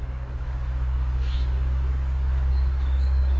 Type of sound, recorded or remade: remade